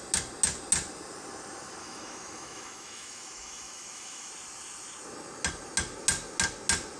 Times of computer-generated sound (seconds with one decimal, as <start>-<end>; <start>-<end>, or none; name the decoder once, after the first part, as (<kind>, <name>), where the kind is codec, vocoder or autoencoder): 1.8-4.3 (autoencoder, DAC-VAE)